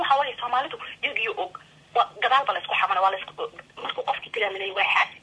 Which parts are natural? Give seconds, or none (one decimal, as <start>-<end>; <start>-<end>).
0.0-3.8